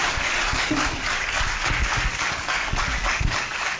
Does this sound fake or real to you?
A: fake